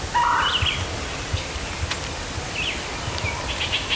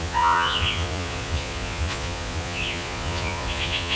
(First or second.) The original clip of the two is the first